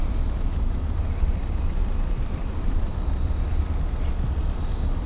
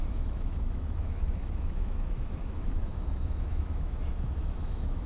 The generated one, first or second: second